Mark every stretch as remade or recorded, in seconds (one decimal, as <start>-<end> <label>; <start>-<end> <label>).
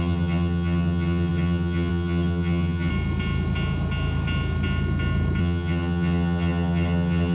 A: 0.0-2.9 remade; 2.9-5.4 recorded; 5.4-7.3 remade